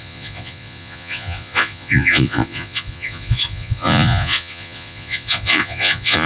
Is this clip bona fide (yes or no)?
no